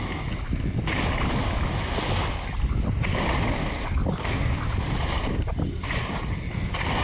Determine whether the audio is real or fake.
real